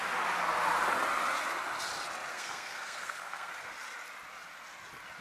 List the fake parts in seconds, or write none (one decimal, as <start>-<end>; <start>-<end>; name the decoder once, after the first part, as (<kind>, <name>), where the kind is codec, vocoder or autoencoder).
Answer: 2.3-3.5 (codec, SNAC)